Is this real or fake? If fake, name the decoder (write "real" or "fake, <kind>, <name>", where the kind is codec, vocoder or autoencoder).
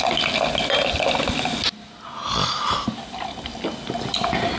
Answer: real